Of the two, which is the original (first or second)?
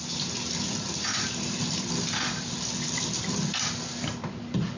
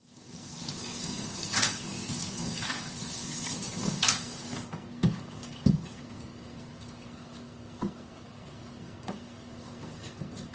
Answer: first